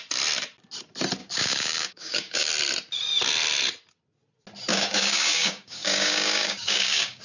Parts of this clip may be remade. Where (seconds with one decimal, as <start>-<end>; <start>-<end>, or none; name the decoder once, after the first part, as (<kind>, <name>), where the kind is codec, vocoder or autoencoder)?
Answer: 1.2-2.5 (codec, DAC); 4.7-7.2